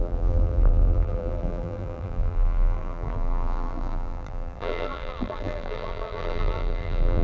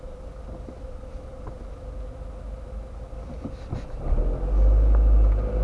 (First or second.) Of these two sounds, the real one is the second